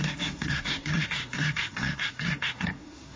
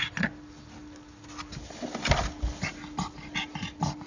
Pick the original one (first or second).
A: second